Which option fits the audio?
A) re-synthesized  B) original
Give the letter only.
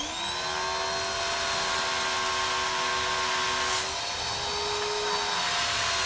B